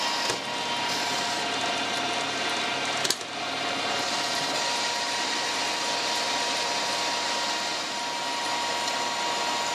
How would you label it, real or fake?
real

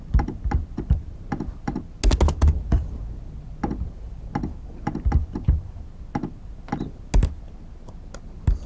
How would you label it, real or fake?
real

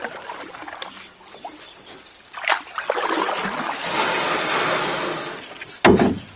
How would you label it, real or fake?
real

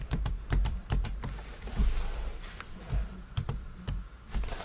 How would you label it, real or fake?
fake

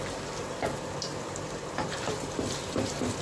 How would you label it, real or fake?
fake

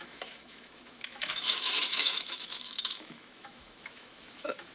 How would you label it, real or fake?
fake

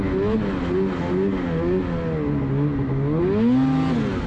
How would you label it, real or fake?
real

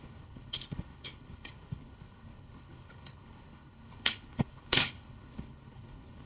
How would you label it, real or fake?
fake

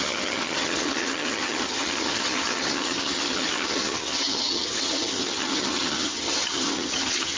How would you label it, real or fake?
fake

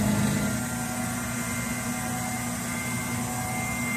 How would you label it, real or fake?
real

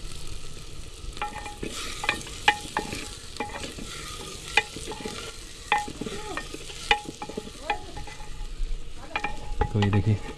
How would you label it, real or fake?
real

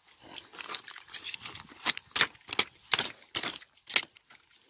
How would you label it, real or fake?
real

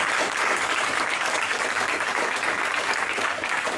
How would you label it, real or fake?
fake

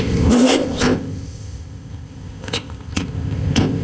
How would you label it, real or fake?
fake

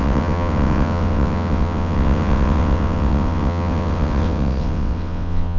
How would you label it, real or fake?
fake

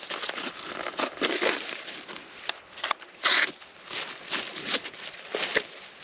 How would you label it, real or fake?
real